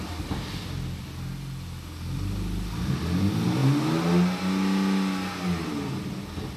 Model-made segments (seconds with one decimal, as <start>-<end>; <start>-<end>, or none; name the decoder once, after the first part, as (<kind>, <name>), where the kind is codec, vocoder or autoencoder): none